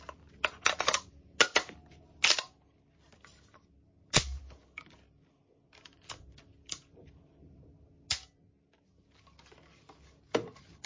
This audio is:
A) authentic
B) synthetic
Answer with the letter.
A